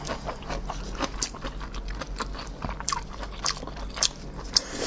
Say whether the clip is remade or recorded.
recorded